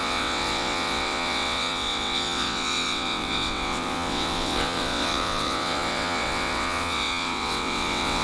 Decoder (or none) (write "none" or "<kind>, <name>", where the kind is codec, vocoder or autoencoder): vocoder, WaveNeXt